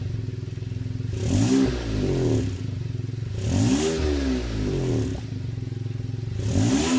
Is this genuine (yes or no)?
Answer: yes